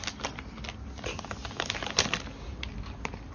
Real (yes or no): yes